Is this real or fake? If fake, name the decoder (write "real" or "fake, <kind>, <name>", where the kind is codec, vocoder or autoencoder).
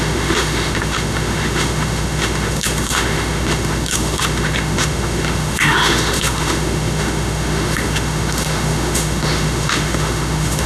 fake, autoencoder, DAC-VAE